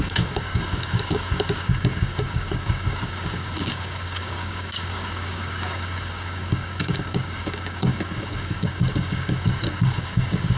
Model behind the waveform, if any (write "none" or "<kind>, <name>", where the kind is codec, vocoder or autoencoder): codec, DAC